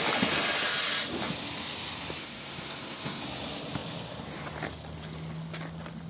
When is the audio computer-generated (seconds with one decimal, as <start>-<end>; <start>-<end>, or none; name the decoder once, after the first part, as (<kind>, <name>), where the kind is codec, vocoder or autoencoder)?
2.2-3.2 (codec, SNAC)